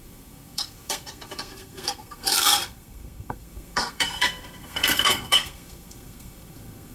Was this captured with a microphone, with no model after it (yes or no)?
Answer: no